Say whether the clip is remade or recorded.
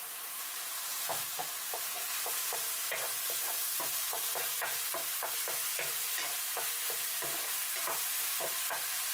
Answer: remade